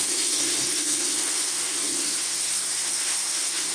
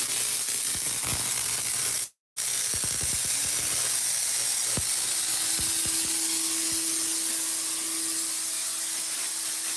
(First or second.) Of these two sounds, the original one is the second